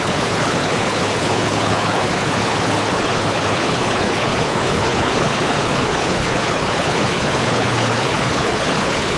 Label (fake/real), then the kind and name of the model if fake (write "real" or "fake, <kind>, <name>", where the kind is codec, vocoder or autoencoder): fake, codec, HILCodec